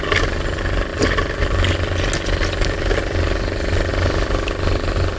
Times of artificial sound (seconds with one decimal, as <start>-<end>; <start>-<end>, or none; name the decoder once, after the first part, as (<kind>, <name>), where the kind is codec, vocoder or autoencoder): none